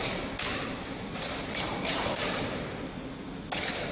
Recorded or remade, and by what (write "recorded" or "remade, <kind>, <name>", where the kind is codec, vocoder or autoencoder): recorded